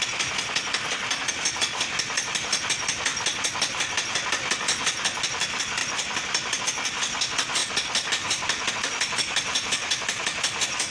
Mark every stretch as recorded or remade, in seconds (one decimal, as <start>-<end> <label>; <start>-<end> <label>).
0.0-10.9 recorded